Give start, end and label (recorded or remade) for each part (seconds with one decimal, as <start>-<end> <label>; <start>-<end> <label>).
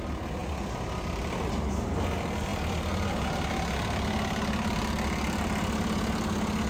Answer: 0.0-6.7 recorded